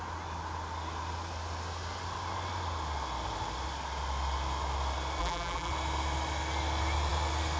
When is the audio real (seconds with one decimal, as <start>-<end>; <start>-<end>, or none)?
0.0-5.2; 5.7-7.6